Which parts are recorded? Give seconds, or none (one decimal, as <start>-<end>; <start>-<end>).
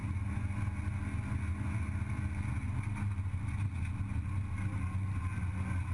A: 0.0-5.9